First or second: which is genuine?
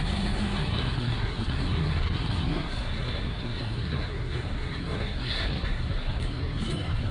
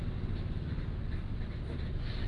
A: second